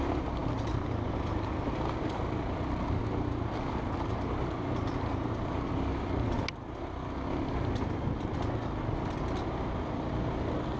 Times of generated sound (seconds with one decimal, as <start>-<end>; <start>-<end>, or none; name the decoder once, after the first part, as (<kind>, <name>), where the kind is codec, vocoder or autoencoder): none